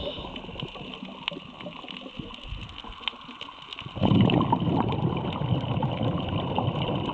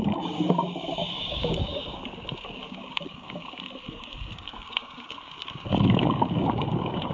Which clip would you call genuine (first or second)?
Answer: first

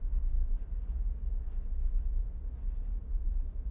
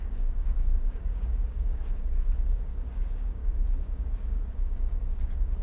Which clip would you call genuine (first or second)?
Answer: first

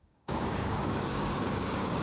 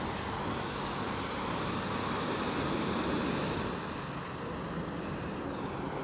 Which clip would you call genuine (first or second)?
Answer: second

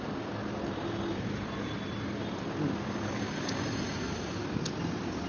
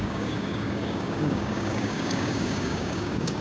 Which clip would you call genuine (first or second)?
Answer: first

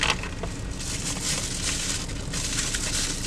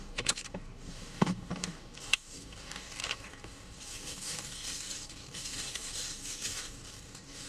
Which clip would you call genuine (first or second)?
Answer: first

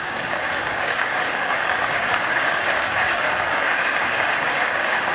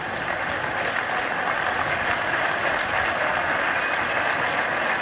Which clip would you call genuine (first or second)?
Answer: second